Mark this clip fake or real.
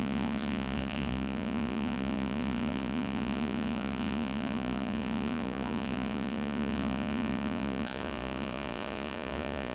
fake